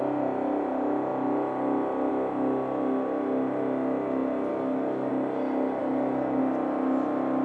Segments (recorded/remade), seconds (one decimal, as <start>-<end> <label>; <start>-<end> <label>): 0.0-4.5 recorded; 4.5-5.1 remade; 5.1-5.8 recorded; 5.8-6.4 remade; 6.4-7.4 recorded